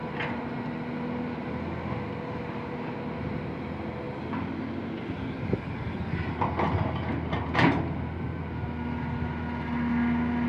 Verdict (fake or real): real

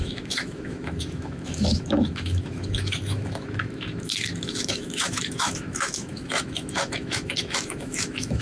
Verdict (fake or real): fake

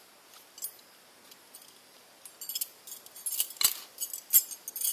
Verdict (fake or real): real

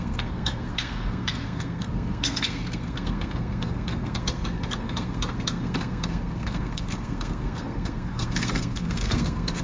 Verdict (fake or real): fake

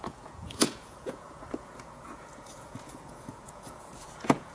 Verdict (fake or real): fake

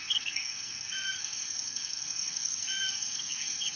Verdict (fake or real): fake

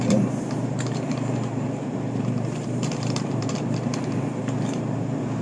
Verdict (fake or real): fake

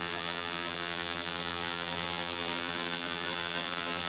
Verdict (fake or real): fake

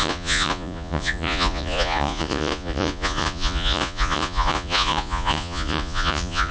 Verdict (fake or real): fake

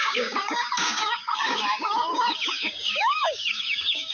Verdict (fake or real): fake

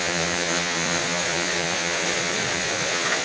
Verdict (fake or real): fake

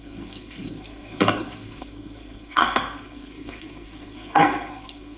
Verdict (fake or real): fake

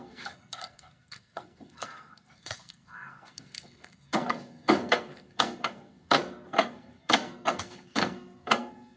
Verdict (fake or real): fake